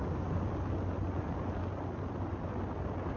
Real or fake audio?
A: real